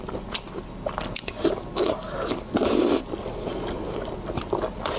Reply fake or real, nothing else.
real